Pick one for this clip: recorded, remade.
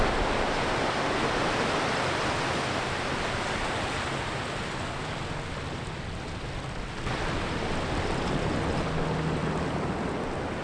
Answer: recorded